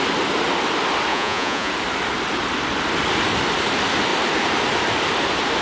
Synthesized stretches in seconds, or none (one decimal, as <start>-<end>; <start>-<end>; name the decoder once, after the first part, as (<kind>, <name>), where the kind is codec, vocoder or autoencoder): 1.1-1.7 (vocoder, Vocos)